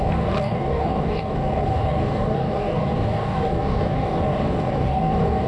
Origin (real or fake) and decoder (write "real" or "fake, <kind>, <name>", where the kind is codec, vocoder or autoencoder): fake, codec, DAC